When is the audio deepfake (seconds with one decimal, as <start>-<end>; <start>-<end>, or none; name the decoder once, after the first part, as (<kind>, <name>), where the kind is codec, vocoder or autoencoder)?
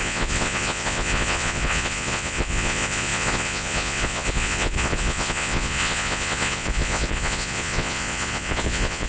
0.0-9.1 (vocoder, Vocos)